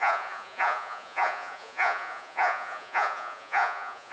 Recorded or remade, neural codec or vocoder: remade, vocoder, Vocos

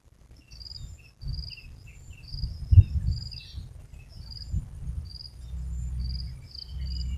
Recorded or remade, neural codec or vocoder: recorded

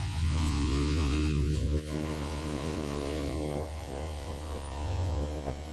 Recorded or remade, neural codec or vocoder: remade, vocoder, Vocos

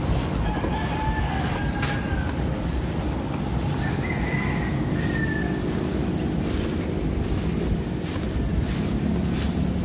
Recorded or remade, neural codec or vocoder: recorded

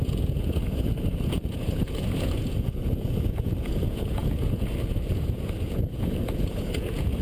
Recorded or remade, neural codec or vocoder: remade, vocoder, Vocos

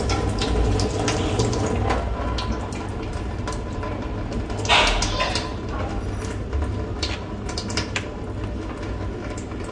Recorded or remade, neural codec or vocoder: recorded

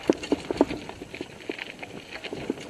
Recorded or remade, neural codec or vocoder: recorded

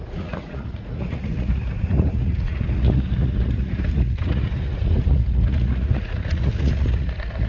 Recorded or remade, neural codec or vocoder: remade, vocoder, Vocos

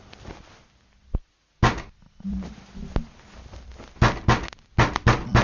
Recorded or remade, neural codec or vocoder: recorded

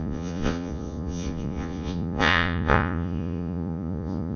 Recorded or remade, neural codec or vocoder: remade, vocoder, Vocos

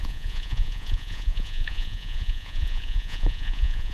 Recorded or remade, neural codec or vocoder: remade, vocoder, Vocos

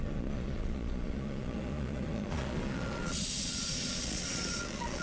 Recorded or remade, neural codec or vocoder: remade, vocoder, Vocos